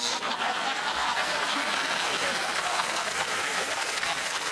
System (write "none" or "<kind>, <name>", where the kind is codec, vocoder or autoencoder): codec, SNAC